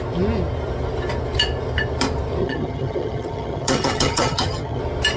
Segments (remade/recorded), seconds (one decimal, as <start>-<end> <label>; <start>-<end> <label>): 0.0-2.4 recorded; 2.4-4.8 remade; 4.8-5.2 recorded